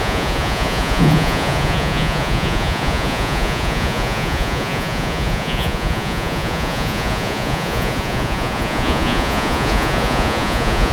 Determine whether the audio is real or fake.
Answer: fake